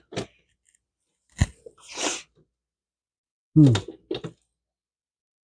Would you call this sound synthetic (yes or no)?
no